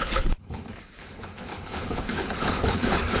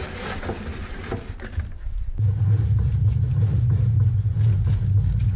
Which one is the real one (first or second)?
second